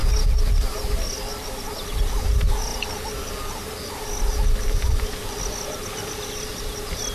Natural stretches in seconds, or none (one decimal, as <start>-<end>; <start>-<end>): 0.0-7.1